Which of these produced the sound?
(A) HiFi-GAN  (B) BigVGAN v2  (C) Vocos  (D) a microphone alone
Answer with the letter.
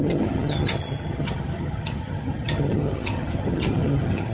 A